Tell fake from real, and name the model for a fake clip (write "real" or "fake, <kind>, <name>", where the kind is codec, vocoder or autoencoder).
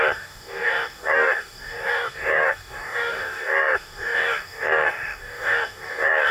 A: fake, codec, DAC